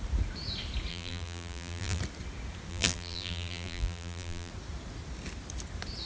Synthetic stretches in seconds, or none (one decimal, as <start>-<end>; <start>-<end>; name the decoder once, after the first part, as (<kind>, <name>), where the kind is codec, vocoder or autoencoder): 0.9-2.0 (vocoder, BigVGAN v2); 2.7-4.5